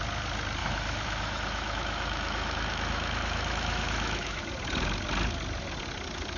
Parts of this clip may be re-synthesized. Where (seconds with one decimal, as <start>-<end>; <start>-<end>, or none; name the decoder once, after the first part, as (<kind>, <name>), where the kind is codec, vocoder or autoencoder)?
0.6-4.4 (autoencoder, DAC-VAE)